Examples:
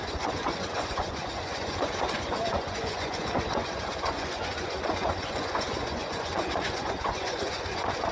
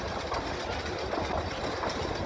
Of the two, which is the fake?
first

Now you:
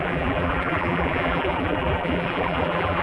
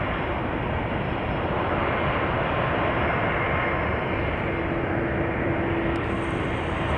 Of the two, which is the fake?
first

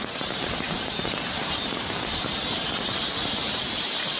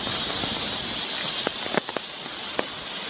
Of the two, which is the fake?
first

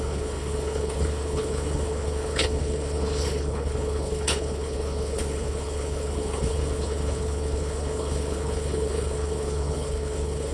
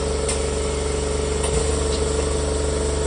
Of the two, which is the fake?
first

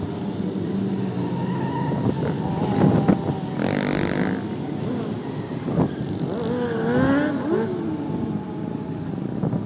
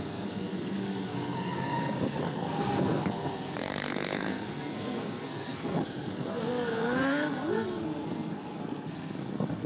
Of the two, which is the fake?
second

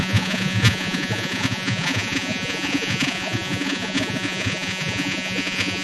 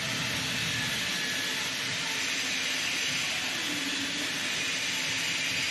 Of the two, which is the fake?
first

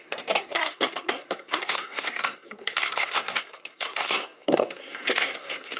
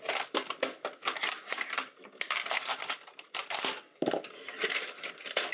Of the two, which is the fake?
first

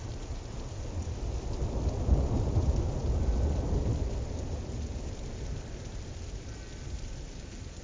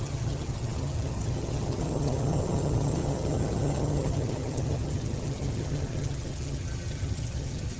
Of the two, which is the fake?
second